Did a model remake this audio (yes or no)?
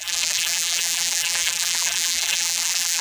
yes